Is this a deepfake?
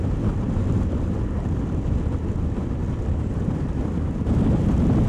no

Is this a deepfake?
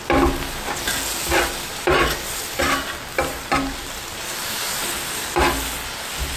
no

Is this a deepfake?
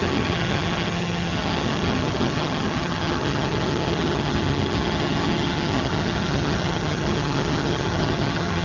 yes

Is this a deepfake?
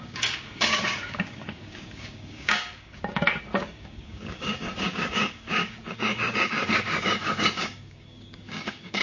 yes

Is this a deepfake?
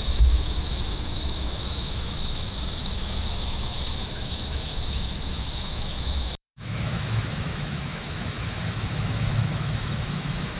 yes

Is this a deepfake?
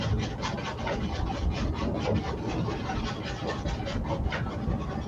no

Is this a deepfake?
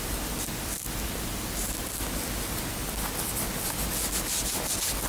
no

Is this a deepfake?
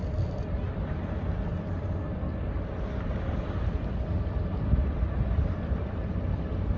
no